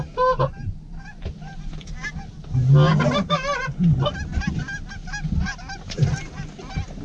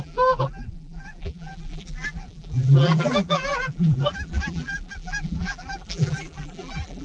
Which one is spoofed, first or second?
second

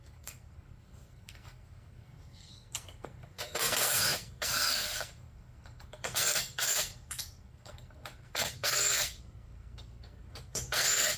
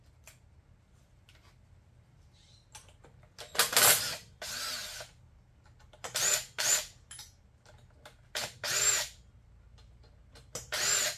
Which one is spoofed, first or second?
first